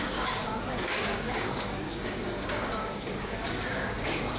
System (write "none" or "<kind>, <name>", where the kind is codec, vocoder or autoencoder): codec, DAC